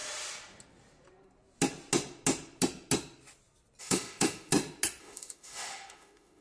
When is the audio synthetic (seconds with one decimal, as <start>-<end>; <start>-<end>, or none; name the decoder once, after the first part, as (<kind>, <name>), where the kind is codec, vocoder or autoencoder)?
3.8-4.5 (autoencoder, DAC-VAE); 5.0-6.4